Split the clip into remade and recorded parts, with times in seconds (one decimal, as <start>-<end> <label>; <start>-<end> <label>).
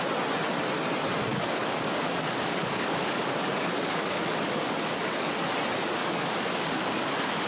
0.0-1.3 recorded; 1.3-5.3 remade; 5.3-6.0 recorded; 6.0-7.1 remade; 7.1-7.5 recorded